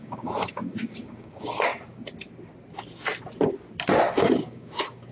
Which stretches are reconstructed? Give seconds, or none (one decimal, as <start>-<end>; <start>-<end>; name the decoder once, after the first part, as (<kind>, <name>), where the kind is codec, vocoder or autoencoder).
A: 0.0-1.7 (codec, DAC); 4.0-5.1